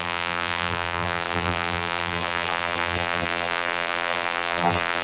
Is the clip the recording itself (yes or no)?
no